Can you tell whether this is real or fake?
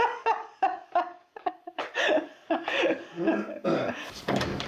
fake